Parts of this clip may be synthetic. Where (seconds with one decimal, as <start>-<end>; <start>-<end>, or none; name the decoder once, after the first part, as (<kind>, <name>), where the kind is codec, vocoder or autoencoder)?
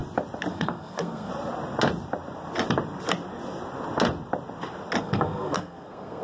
0.5-1.3 (codec, SNAC); 5.0-6.2